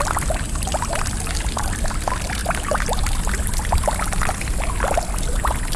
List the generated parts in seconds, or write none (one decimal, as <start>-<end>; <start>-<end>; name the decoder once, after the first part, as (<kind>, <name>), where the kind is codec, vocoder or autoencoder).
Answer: none